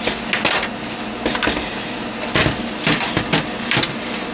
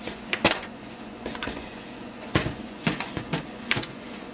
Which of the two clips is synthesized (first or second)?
second